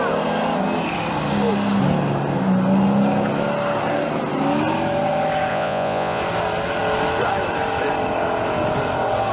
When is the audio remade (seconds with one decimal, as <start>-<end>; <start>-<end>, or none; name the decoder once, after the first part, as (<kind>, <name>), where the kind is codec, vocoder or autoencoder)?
5.5-6.2 (vocoder, Vocos)